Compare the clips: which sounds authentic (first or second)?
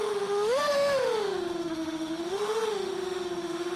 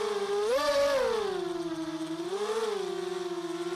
second